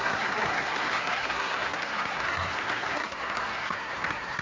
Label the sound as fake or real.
fake